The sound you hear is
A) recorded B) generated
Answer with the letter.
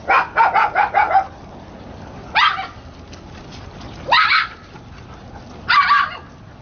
A